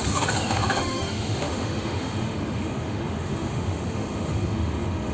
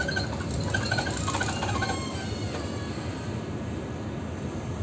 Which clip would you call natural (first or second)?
second